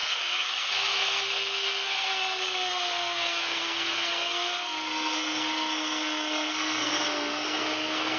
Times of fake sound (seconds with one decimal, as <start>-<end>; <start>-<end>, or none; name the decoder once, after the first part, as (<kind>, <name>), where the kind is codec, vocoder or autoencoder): 0.0-8.2 (codec, SNAC)